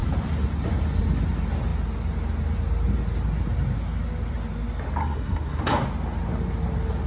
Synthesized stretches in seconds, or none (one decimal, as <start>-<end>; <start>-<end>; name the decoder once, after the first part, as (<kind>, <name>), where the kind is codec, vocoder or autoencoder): 5.0-5.6 (codec, SNAC)

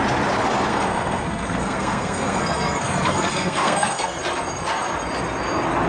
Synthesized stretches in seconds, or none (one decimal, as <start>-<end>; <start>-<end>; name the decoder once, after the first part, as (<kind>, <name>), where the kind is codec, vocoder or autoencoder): 0.7-4.2 (codec, SNAC)

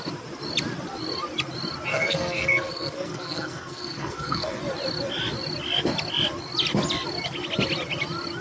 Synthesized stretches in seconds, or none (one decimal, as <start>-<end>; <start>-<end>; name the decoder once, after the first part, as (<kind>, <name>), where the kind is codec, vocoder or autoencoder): 1.9-4.6 (codec, SNAC)

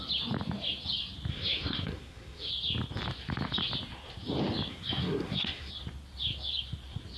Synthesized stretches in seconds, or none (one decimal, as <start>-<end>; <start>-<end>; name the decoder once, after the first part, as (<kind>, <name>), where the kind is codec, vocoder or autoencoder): 1.3-2.5 (codec, SNAC); 4.7-5.7